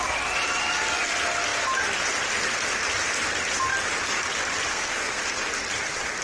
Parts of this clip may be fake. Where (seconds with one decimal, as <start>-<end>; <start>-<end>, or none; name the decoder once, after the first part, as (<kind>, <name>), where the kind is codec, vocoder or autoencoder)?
4.7-5.2 (codec, SNAC)